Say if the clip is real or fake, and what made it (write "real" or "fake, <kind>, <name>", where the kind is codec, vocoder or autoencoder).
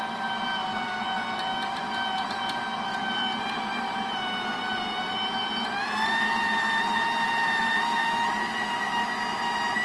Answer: real